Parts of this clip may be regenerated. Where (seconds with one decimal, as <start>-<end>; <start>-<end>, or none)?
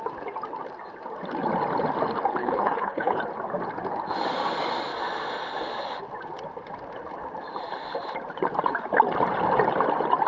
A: 2.4-3.2